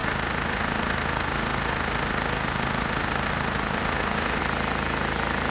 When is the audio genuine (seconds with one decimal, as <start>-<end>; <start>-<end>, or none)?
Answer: 4.4-5.5